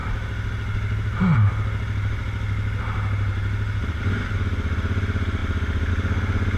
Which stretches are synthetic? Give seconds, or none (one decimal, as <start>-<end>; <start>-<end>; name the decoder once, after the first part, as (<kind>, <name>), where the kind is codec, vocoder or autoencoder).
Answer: none